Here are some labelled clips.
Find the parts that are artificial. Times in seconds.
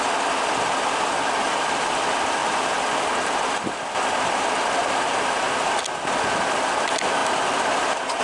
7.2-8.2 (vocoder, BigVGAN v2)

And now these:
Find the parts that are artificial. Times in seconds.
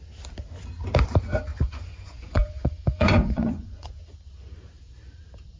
1.5-3.9 (vocoder, Vocos)